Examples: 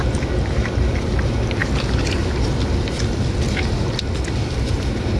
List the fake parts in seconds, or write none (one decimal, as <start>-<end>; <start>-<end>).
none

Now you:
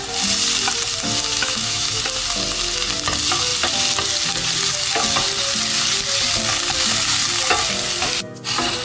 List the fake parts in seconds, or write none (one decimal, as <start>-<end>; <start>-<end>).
1.3-2.0

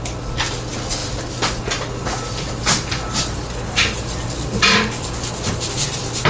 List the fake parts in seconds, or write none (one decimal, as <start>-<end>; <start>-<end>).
none